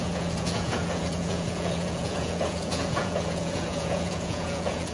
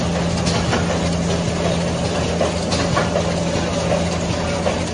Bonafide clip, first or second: second